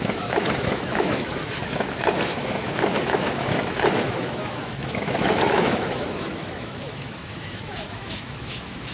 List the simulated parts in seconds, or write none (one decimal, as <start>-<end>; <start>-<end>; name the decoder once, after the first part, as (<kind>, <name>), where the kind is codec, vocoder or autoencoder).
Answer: 0.0-8.9 (autoencoder, DAC-VAE)